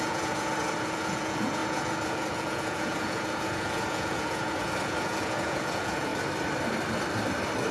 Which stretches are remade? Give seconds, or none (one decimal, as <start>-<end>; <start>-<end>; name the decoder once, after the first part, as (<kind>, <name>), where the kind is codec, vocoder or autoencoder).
0.0-6.1 (vocoder, Vocos)